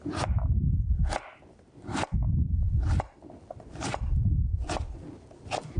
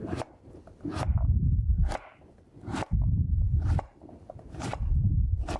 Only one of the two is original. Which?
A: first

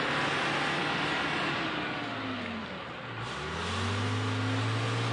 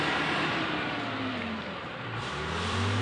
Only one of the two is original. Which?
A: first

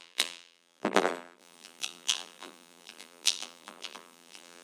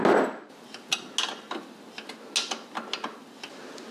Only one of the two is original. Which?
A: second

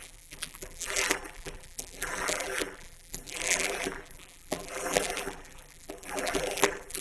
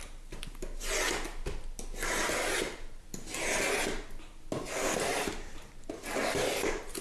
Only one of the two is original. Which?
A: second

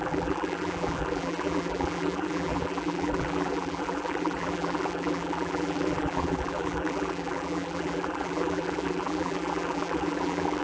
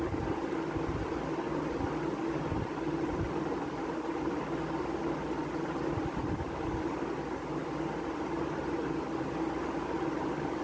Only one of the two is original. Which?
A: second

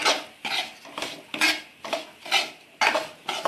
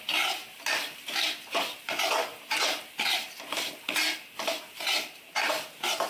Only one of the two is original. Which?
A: first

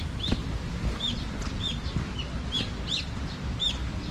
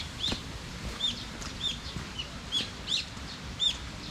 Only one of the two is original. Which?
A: first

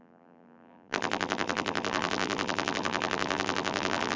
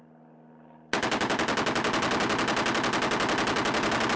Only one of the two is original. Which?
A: second